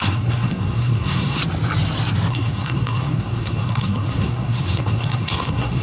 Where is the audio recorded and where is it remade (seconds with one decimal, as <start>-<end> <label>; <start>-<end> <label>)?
0.0-1.4 remade; 1.4-2.3 recorded; 2.3-5.8 remade